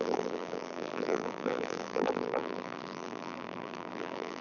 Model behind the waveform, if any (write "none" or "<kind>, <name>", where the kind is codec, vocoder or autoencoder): vocoder, BigVGAN v2